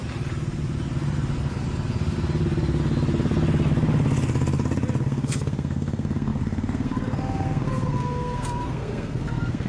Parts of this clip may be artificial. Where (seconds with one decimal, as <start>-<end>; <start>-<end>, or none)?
5.0-9.7

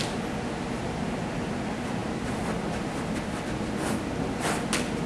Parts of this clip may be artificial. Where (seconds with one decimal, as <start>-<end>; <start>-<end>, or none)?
none

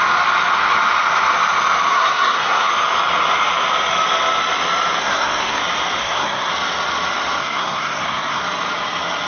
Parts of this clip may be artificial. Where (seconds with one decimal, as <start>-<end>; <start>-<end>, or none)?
1.9-2.7; 5.0-5.6; 6.0-6.5; 7.4-8.4

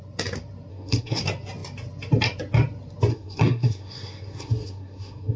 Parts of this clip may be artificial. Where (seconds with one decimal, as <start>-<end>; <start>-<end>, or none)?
0.7-1.2; 3.1-5.4

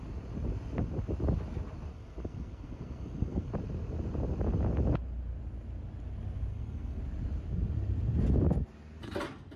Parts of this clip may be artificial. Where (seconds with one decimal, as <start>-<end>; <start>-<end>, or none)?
1.9-3.5; 6.5-7.0

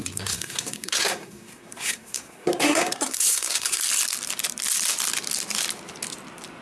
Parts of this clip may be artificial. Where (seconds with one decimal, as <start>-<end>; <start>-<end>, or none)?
0.0-3.8

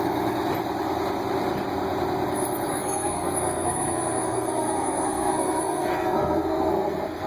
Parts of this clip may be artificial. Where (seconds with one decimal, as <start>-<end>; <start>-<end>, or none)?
2.7-7.3

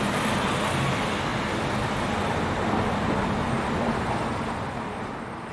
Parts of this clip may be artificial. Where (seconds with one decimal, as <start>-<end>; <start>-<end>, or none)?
none